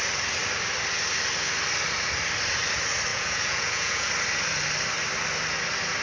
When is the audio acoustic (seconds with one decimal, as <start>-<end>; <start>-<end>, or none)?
0.0-3.1; 4.1-6.0